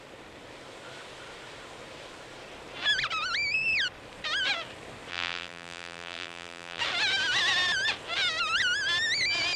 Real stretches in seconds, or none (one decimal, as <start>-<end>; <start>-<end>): 0.0-5.1; 6.8-9.6